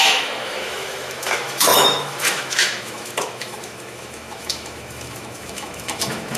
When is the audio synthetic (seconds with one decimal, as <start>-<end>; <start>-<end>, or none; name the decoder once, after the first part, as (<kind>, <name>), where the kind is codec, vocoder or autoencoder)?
0.0-6.4 (autoencoder, DAC-VAE)